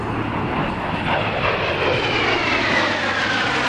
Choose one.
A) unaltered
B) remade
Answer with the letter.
A